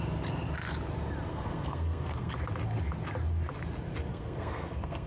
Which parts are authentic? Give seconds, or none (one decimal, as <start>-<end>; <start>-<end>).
0.0-1.3; 2.3-4.1